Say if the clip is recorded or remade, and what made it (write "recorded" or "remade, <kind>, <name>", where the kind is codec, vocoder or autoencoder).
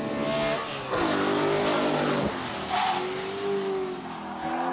recorded